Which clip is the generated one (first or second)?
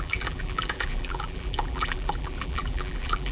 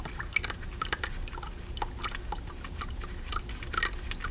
first